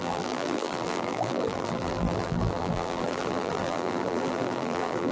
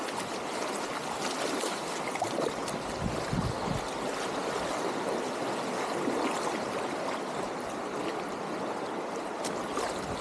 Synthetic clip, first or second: first